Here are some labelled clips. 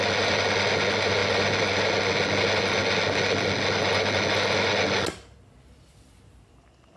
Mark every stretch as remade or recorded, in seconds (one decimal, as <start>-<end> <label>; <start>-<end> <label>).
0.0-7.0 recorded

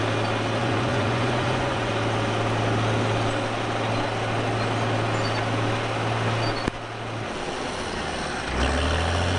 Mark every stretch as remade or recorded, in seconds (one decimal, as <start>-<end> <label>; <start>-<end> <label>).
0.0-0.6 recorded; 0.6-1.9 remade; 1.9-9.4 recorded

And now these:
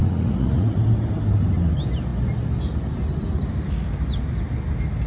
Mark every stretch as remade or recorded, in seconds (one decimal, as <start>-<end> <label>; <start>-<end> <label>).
0.0-0.8 remade; 0.8-5.1 recorded

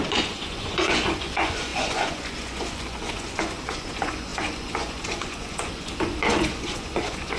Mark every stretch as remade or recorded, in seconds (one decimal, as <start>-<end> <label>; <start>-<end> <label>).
0.0-7.4 remade

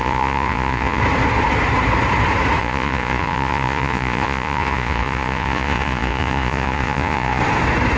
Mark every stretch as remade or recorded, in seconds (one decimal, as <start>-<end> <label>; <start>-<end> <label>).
0.0-1.0 remade; 1.0-2.6 recorded; 2.6-7.4 remade; 7.4-8.0 recorded

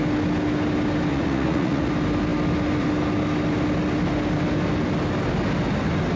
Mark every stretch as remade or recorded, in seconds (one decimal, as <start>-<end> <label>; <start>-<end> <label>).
0.0-1.1 recorded; 1.1-1.9 remade; 1.9-6.2 recorded

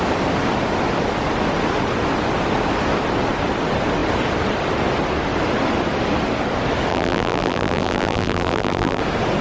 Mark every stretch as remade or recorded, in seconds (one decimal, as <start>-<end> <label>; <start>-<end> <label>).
0.0-6.9 recorded; 6.9-9.0 remade; 9.0-9.4 recorded

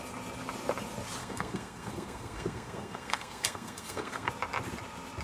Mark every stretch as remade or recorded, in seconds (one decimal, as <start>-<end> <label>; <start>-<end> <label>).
0.0-1.2 recorded; 1.2-4.3 remade; 4.3-5.2 recorded